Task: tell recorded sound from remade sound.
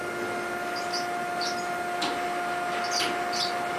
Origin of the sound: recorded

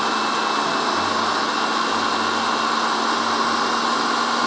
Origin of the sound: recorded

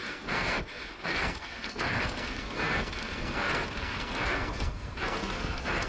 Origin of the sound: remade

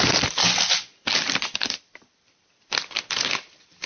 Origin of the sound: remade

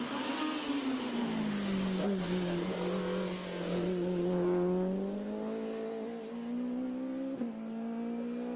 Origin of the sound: recorded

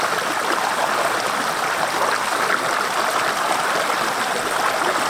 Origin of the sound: recorded